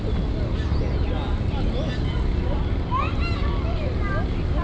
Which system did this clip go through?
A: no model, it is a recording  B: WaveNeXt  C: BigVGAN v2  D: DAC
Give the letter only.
A